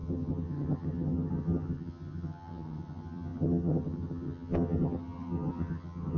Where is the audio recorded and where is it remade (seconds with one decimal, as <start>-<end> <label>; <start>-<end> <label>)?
0.0-6.2 remade